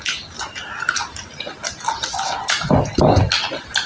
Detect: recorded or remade recorded